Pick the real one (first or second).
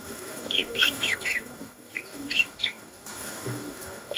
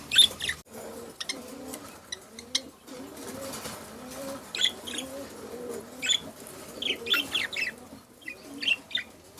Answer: second